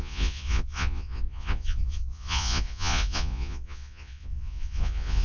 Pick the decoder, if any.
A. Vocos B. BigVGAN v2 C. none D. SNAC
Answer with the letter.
A